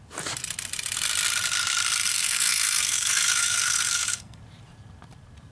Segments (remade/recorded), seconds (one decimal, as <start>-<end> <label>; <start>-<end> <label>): 0.0-2.1 recorded; 2.1-4.4 remade; 4.4-5.5 recorded